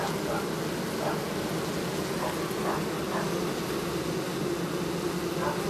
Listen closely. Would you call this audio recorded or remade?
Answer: recorded